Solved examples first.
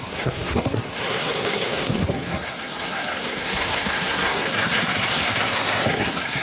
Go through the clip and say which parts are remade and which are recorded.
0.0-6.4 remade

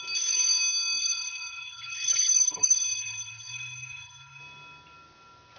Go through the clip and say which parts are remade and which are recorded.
0.0-1.0 recorded; 1.0-4.4 remade; 4.4-5.6 recorded

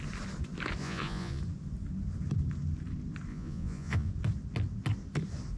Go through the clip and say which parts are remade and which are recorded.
0.0-0.8 recorded; 0.8-1.4 remade; 1.4-3.3 recorded; 3.3-4.1 remade; 4.1-5.6 recorded

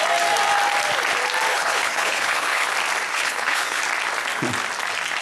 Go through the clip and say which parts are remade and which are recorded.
0.0-1.5 recorded; 1.5-2.7 remade; 2.7-3.1 recorded; 3.1-3.8 remade; 3.8-5.2 recorded